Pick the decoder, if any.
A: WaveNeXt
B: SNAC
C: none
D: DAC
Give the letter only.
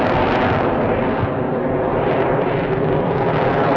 C